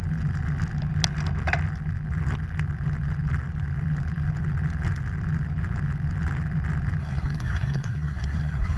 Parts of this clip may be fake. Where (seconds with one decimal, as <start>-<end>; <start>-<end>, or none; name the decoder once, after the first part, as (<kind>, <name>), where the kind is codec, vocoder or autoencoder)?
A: 7.0-8.8 (codec, SNAC)